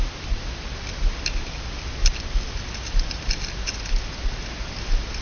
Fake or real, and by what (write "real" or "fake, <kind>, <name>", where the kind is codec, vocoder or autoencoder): real